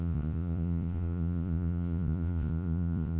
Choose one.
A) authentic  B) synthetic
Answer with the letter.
B